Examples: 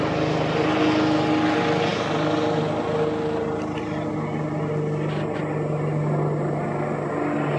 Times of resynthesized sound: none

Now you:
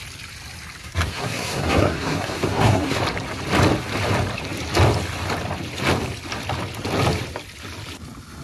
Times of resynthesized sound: 0.8-3.0 (codec, SNAC)

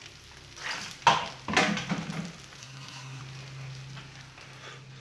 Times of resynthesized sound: 2.6-3.2 (codec, SNAC)

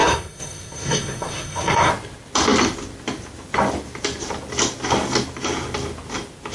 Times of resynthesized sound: 0.0-1.9 (codec, SNAC)

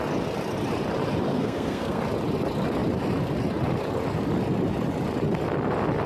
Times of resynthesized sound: 1.3-2.0 (codec, SNAC)